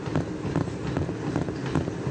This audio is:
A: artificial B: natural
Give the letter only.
B